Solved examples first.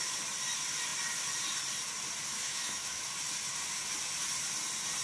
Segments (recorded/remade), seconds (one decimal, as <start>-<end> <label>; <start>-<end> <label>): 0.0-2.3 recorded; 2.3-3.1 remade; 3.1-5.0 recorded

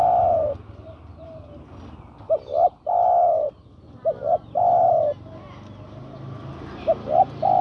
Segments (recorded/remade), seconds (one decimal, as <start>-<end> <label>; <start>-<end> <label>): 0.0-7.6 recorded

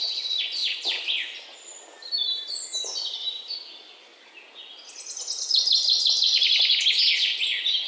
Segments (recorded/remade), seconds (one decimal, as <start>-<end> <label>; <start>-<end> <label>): 0.0-7.9 recorded

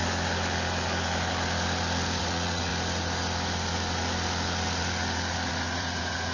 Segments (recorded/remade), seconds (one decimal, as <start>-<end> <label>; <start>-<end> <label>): 0.0-2.2 recorded; 2.2-2.7 remade; 2.7-5.5 recorded; 5.5-6.3 remade